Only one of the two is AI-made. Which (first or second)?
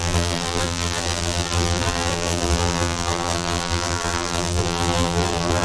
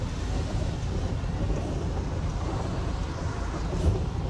first